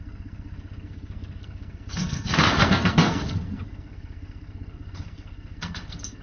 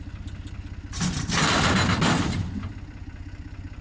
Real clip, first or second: second